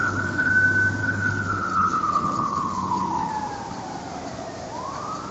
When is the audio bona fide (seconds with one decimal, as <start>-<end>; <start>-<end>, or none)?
0.5-1.0; 3.3-5.3